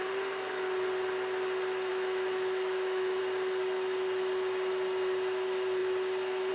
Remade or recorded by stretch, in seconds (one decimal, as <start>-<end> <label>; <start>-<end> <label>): 0.0-1.9 recorded; 1.9-3.2 remade; 3.2-6.5 recorded